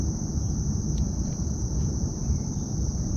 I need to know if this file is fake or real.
real